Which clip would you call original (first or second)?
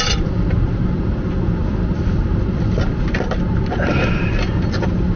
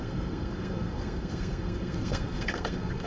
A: first